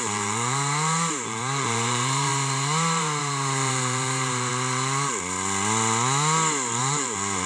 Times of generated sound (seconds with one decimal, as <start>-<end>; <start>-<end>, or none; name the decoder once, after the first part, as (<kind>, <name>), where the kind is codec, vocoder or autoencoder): 0.0-4.5 (vocoder, BigVGAN v2); 6.8-7.5